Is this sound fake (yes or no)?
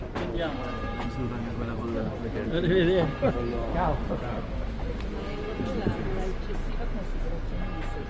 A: no